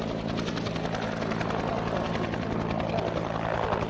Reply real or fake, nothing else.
real